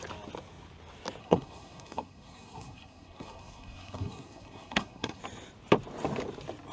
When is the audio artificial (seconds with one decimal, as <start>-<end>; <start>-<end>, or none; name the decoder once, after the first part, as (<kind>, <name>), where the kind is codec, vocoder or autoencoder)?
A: 1.2-5.2 (codec, SNAC)